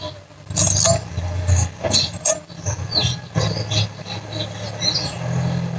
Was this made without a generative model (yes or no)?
yes